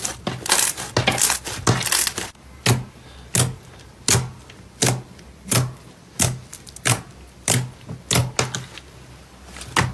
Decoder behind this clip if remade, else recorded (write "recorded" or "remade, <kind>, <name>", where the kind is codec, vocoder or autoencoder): recorded